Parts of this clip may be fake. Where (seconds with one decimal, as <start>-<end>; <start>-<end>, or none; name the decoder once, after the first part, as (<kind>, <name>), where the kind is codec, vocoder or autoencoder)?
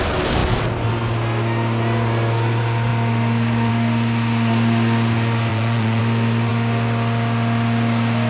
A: 5.5-6.0 (vocoder, Vocos)